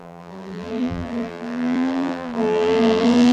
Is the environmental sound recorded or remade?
remade